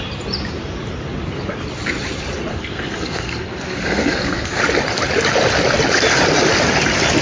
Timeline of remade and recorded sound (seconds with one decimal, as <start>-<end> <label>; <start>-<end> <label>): 0.0-2.5 recorded; 2.5-4.6 remade; 4.6-7.2 recorded